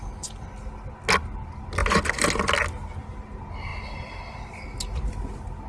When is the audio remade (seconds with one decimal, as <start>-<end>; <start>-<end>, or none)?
none